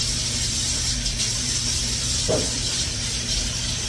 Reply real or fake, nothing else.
fake